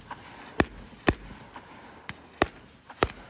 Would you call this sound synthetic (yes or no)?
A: no